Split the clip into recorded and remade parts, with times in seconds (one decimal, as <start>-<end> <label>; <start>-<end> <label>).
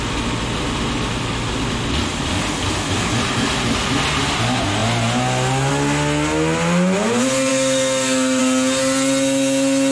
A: 0.0-7.5 recorded; 7.5-8.4 remade; 8.4-9.9 recorded